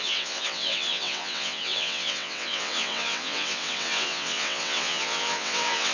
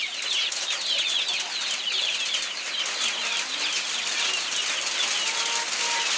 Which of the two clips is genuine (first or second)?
second